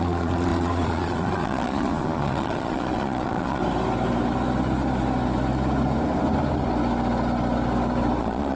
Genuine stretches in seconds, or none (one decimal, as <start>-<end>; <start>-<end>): 3.6-8.2